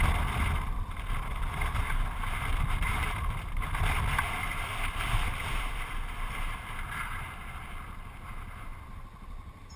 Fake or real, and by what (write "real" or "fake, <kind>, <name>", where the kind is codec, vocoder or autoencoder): fake, vocoder, BigVGAN v2